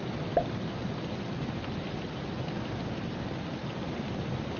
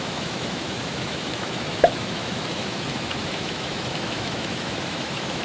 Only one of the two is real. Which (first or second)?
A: first